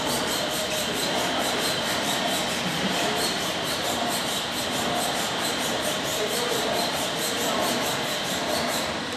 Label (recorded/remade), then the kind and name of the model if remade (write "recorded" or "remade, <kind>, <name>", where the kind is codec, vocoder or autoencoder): remade, vocoder, BigVGAN v2